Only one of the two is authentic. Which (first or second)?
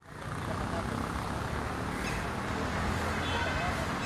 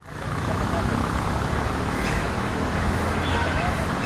first